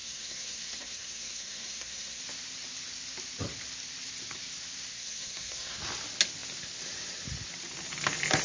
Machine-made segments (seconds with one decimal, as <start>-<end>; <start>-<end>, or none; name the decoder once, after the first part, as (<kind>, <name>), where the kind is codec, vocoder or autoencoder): 0.0-2.2 (codec, SNAC); 4.9-5.8